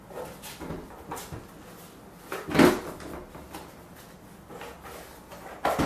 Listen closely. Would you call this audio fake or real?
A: real